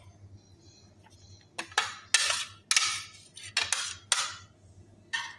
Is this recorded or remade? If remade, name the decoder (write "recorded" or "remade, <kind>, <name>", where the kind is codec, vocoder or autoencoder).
recorded